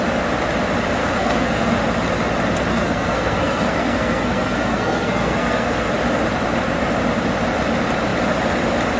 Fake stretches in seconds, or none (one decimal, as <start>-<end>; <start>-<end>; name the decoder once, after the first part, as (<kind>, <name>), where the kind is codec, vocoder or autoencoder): 1.0-1.8 (codec, SNAC); 2.7-5.9